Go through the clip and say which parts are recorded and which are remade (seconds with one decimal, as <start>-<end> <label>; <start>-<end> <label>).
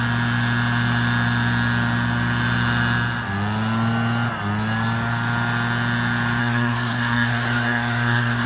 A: 0.0-6.4 recorded; 6.4-8.5 remade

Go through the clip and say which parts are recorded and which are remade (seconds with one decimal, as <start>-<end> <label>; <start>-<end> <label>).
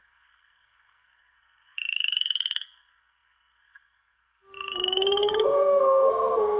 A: 0.0-6.6 remade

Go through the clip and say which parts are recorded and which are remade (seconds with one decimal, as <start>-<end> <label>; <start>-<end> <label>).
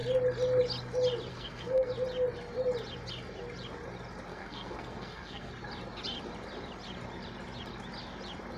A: 0.0-1.3 recorded; 1.3-1.9 remade; 1.9-4.3 recorded; 4.3-5.5 remade; 5.5-8.6 recorded